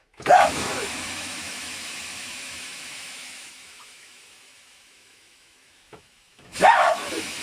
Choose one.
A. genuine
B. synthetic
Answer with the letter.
B